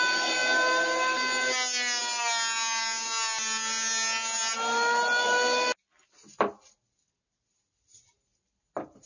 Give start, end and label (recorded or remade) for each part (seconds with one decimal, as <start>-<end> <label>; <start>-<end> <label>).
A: 0.0-9.1 recorded